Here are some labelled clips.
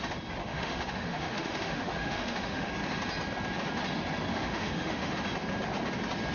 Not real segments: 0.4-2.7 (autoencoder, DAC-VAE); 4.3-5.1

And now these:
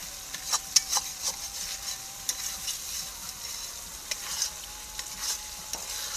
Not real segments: none

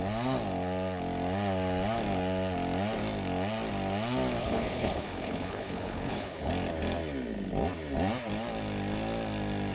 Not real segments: 4.4-6.5 (codec, HILCodec)